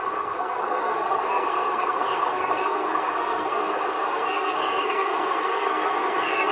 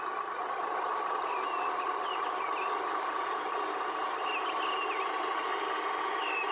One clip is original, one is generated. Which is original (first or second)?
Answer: second